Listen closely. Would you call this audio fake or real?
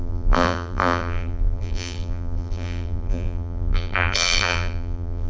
fake